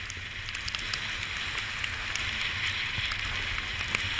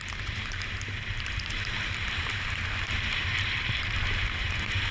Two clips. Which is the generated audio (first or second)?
second